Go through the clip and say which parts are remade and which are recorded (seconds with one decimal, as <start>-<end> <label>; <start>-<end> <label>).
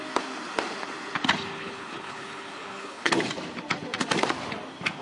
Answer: 0.0-1.5 recorded; 1.5-3.1 remade; 3.1-5.0 recorded